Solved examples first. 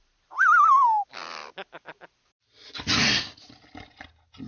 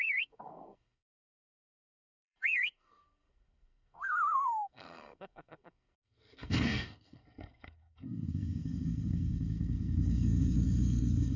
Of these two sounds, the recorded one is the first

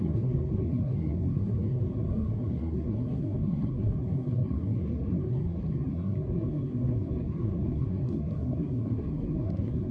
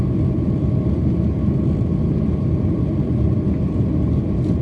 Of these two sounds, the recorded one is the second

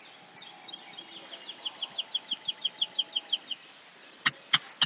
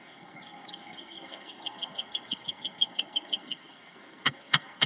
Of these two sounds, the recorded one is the first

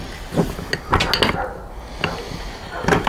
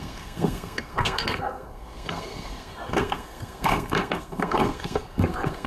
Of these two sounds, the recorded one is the first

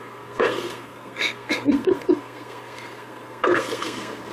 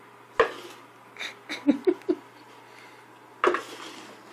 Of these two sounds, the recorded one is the second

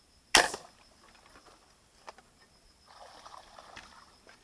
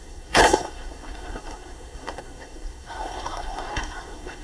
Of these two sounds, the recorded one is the first